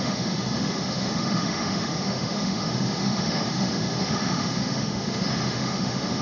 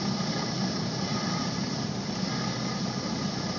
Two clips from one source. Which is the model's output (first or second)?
first